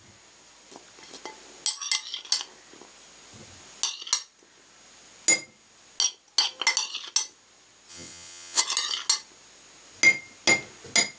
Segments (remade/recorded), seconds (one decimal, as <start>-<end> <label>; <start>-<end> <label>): 0.0-7.9 recorded; 7.9-8.6 remade; 8.6-11.2 recorded